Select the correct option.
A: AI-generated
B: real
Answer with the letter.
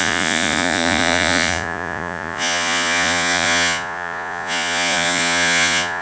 A